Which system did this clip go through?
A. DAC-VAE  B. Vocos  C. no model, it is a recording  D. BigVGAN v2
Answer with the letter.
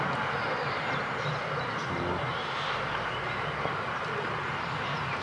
C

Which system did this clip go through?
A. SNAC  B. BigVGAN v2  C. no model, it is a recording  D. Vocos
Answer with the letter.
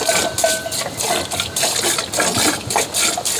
C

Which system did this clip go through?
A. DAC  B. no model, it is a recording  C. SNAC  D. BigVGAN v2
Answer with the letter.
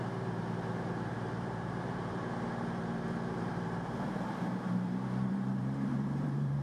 D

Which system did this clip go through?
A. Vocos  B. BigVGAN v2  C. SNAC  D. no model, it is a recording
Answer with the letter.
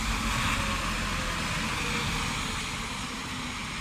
D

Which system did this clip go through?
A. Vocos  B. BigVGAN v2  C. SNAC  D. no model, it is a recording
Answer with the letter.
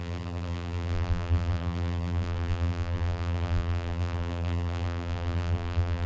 B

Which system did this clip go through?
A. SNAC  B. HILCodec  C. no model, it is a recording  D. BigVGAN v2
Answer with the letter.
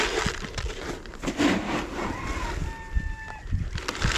C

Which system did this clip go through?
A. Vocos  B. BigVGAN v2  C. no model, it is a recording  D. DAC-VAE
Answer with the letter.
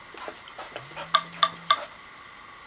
C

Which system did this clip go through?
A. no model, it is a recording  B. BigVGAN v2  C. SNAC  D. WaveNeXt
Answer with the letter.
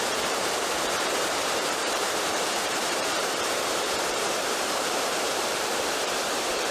B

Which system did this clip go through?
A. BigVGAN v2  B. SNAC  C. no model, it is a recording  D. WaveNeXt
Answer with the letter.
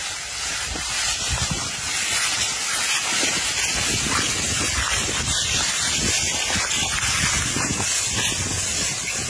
C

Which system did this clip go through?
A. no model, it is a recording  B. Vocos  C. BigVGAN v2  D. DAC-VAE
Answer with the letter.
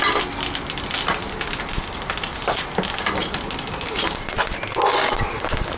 A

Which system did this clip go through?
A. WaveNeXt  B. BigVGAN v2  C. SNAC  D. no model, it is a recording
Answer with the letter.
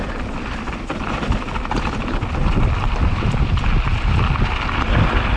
B